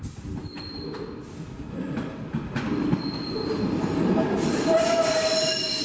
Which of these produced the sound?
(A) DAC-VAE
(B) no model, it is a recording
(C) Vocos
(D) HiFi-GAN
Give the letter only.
B